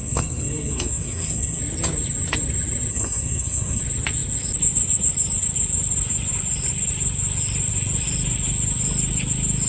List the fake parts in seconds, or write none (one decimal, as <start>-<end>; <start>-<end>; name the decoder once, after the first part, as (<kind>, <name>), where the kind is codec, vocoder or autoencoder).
0.0-1.6 (codec, SNAC); 2.9-3.8